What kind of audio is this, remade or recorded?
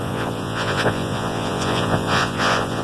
remade